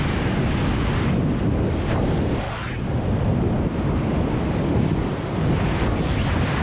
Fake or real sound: real